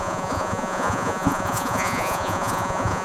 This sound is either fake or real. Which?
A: fake